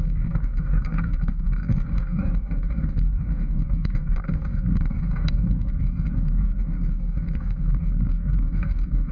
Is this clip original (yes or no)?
no